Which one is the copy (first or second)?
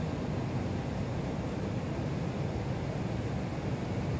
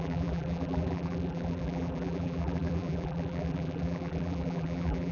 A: second